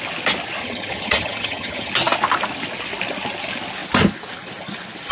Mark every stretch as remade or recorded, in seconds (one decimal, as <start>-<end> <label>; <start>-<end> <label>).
0.0-0.6 recorded; 0.6-1.9 remade; 1.9-5.1 recorded